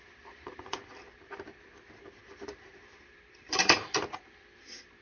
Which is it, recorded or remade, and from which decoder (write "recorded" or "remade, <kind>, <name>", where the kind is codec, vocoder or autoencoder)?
remade, vocoder, BigVGAN v2